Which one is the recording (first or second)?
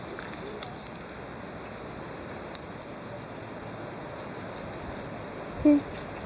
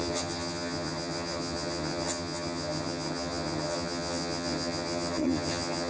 first